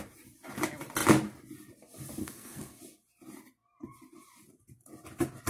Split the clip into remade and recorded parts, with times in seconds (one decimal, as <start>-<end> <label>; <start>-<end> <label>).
0.0-2.2 recorded; 2.2-2.8 remade; 2.8-5.5 recorded